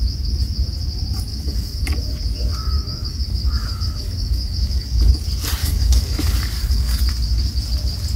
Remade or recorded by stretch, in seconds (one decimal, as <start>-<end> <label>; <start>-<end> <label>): 0.0-1.3 recorded; 1.3-2.0 remade; 2.0-2.6 recorded; 2.6-5.1 remade; 5.1-5.6 recorded; 5.6-7.0 remade; 7.0-8.2 recorded